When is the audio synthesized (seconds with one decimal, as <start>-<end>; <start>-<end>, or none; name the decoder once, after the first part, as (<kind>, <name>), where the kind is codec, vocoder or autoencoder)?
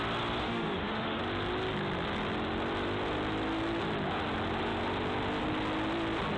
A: 0.4-1.2 (autoencoder, DAC-VAE)